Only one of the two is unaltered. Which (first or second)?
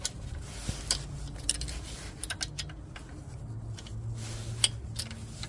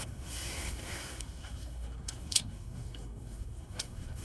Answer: first